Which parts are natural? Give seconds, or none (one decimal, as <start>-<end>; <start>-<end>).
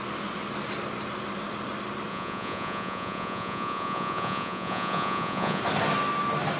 0.0-2.1; 5.6-6.6